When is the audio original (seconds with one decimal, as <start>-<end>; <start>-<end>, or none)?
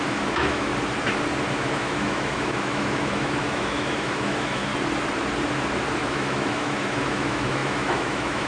0.7-1.5; 4.7-5.9